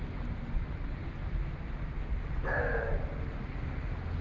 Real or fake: real